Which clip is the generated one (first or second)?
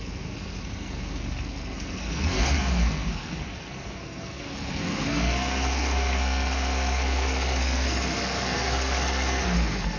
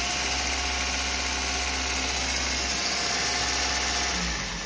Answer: first